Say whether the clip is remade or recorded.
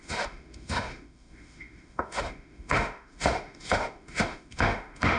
remade